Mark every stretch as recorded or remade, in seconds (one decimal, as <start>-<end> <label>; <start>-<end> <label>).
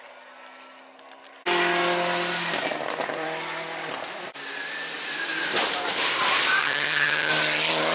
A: 0.0-6.6 recorded; 6.6-7.3 remade; 7.3-7.9 recorded